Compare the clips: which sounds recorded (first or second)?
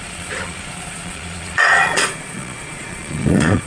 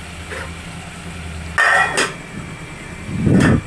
second